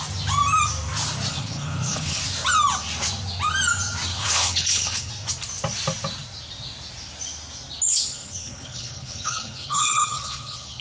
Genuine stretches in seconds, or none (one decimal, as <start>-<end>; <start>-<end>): 0.0-1.3; 2.2-4.1; 5.1-7.9